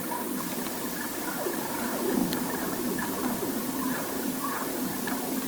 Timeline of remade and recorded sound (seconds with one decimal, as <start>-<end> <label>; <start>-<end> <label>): 0.0-5.5 recorded